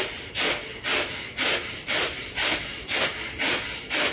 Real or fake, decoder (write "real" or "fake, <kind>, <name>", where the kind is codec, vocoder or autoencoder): real